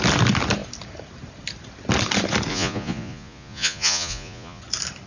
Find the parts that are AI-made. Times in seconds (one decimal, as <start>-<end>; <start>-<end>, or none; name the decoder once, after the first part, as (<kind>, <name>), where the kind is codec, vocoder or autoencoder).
2.5-4.6 (vocoder, Vocos)